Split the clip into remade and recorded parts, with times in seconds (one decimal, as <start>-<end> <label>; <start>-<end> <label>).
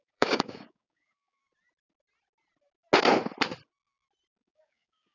0.0-1.4 remade; 1.4-4.4 recorded; 4.4-5.1 remade